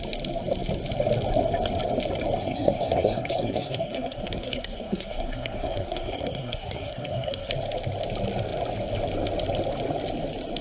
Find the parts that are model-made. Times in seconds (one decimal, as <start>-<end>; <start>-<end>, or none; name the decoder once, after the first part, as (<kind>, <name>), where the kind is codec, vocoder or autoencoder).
2.4-7.5 (codec, SNAC)